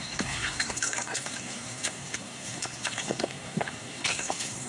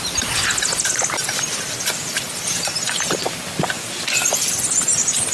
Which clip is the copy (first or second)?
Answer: first